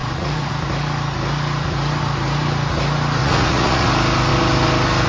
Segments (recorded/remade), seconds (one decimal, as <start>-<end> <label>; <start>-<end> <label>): 0.0-0.5 remade; 0.5-3.2 recorded; 3.2-3.9 remade; 3.9-5.1 recorded